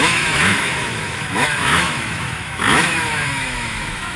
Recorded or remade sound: remade